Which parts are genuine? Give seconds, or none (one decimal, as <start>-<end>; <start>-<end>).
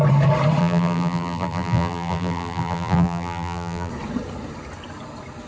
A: 0.0-0.6; 3.9-5.5